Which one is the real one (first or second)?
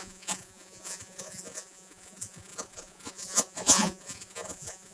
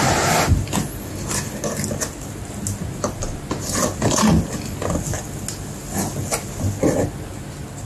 second